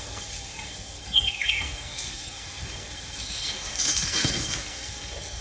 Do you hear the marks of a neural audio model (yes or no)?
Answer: yes